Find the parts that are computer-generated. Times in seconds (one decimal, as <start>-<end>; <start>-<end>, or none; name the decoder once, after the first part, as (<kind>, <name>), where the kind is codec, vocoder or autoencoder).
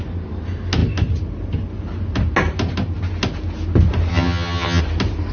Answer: 4.1-4.8 (vocoder, HiFi-GAN)